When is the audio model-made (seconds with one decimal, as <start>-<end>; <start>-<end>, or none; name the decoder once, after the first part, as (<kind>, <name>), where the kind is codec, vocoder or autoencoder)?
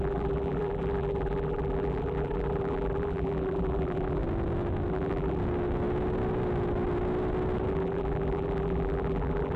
0.0-4.2 (vocoder, BigVGAN v2); 4.9-5.4; 7.7-9.6